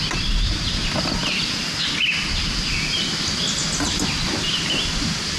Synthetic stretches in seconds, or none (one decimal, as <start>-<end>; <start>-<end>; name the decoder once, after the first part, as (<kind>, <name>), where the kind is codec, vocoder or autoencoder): none